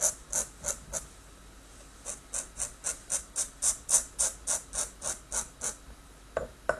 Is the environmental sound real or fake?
real